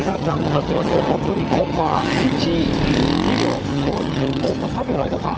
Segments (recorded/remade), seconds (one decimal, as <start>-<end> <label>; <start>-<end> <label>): 0.0-2.4 remade; 2.4-3.7 recorded; 3.7-5.4 remade